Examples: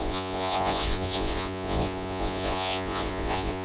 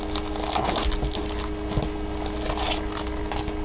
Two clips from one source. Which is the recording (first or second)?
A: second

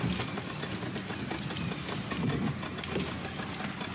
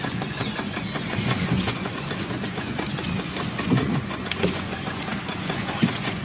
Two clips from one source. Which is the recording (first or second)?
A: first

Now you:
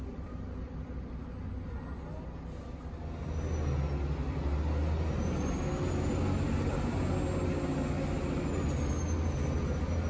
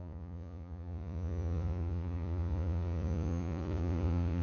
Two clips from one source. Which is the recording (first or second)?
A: first